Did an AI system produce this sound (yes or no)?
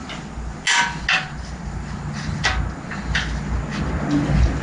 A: no